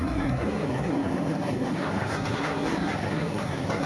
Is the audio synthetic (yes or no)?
yes